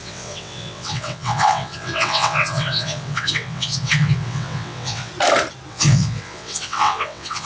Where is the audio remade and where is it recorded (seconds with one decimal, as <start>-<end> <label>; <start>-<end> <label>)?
0.0-5.1 remade; 5.1-5.7 recorded; 5.7-7.5 remade